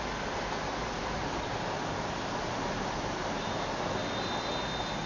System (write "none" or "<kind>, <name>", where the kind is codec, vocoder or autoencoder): none